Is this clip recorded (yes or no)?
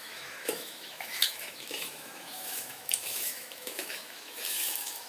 no